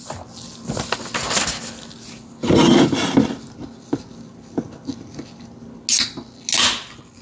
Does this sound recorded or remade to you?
recorded